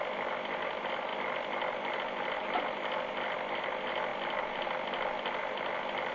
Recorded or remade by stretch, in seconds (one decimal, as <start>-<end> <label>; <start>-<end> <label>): 0.0-6.1 recorded